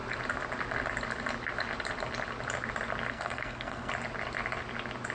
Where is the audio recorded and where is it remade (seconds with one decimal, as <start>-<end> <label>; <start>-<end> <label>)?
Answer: 0.0-3.1 recorded; 3.1-3.9 remade; 3.9-5.1 recorded